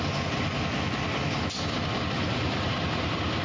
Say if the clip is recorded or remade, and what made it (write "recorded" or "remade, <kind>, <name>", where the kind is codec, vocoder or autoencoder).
recorded